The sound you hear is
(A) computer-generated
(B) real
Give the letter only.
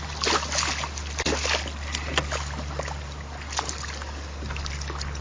B